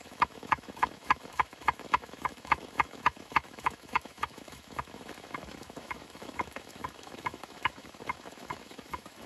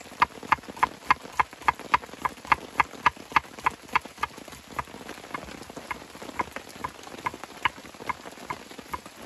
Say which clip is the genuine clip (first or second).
second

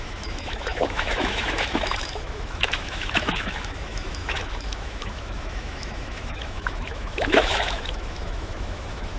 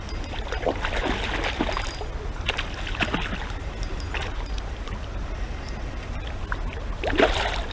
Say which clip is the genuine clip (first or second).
second